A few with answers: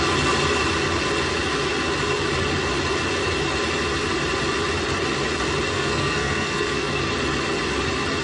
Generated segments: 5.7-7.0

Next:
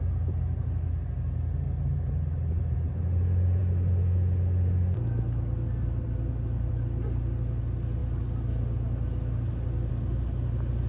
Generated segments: none